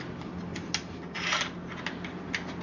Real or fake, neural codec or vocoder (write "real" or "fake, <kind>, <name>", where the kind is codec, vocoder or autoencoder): real